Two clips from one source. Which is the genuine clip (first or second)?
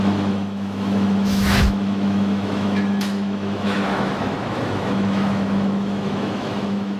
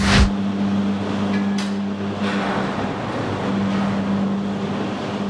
second